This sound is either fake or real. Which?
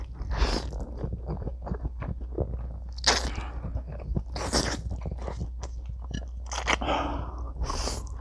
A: real